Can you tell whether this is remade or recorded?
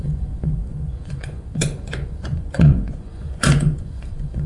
remade